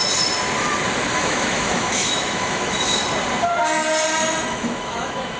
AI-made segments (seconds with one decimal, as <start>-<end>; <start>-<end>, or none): 1.1-3.0; 4.5-5.4